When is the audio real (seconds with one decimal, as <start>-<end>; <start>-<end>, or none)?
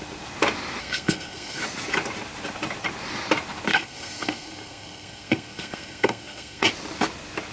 0.0-0.8; 1.6-3.7; 6.7-7.5